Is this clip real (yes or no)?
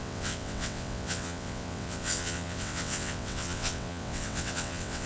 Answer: no